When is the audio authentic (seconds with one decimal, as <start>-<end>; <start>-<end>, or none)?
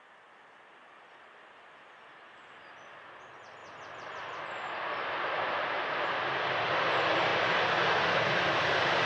0.0-9.1